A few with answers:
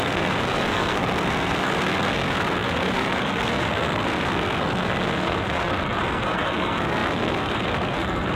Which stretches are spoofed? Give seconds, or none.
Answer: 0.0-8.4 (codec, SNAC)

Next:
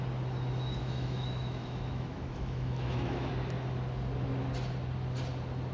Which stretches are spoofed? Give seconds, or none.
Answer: 0.8-3.3 (autoencoder, DAC-VAE)

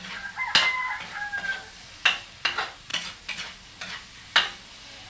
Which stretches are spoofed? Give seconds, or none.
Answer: none

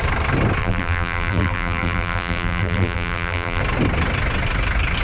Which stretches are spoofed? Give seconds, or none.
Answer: 0.6-3.6 (vocoder, BigVGAN v2)